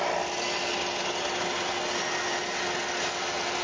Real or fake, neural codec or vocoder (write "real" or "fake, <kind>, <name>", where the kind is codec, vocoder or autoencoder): real